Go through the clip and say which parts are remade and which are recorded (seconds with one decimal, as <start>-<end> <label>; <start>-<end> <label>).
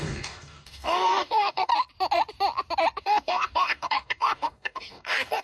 0.0-1.7 remade; 1.7-3.0 recorded; 3.0-5.4 remade